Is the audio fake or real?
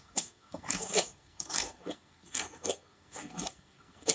fake